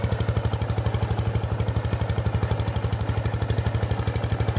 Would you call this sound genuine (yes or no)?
yes